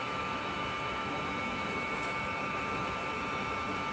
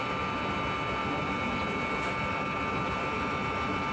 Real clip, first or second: second